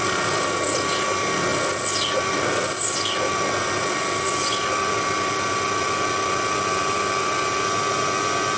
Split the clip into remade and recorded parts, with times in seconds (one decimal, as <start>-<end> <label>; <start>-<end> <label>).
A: 0.0-8.6 recorded